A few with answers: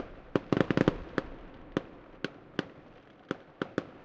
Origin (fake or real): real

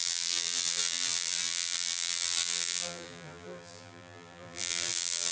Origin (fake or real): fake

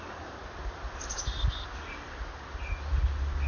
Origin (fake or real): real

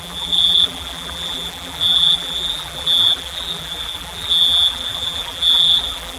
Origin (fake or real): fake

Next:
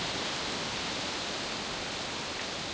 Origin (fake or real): real